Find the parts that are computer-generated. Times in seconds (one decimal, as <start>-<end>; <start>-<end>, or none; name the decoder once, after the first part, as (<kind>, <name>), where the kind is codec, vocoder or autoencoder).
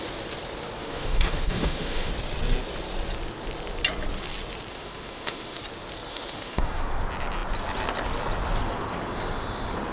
0.8-2.1 (autoencoder, DAC-VAE); 4.7-5.6; 6.1-6.9